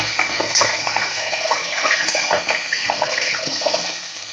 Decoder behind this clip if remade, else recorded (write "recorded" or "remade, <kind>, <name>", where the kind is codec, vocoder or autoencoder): remade, codec, SNAC